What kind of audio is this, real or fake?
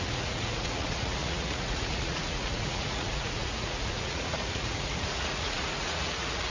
fake